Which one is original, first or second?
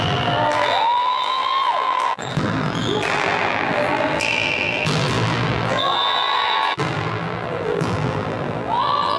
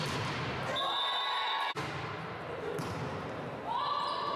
second